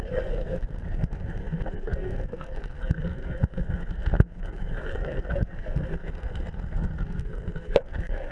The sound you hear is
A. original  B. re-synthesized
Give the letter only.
B